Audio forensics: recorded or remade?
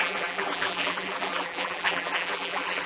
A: remade